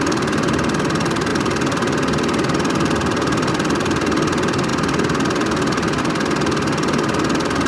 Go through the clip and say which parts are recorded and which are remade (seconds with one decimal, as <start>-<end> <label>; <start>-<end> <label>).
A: 0.0-7.7 recorded